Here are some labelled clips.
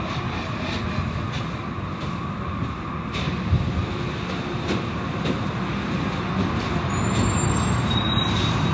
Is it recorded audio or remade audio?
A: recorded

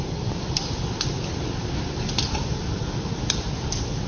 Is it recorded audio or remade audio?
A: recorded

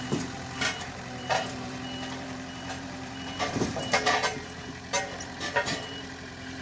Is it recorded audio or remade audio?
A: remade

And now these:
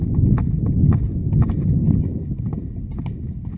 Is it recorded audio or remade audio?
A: recorded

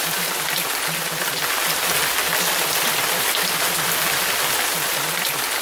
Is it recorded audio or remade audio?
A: recorded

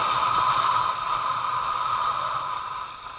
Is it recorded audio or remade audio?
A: remade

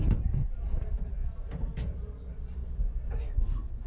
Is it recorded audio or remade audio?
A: recorded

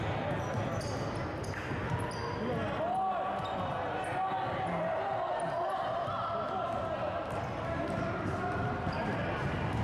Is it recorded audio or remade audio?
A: recorded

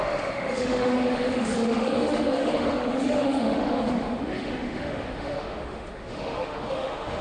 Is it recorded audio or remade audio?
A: remade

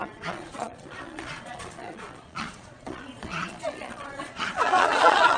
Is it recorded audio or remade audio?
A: remade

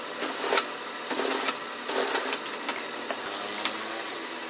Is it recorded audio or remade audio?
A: recorded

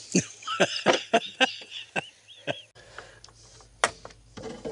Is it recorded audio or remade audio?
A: recorded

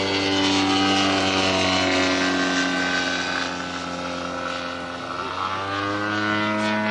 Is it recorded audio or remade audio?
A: recorded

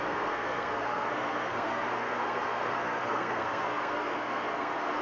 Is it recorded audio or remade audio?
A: remade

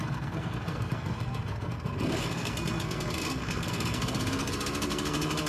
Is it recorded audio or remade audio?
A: remade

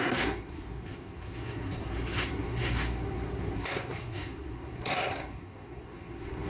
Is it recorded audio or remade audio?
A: remade